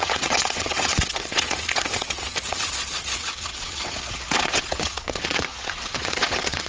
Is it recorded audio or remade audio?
remade